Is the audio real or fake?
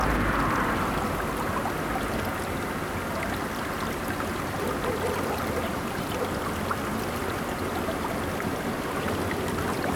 real